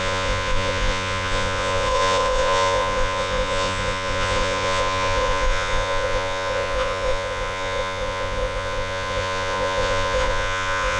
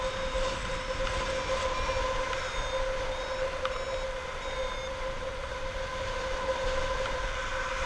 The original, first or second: second